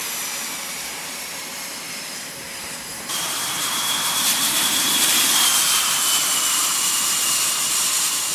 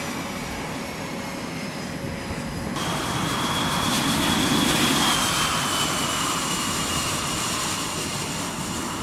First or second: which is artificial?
first